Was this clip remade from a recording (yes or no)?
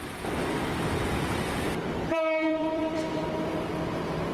yes